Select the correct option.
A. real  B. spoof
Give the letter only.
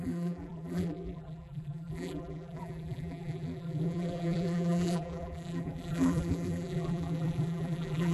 B